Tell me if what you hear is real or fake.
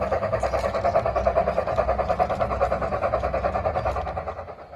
real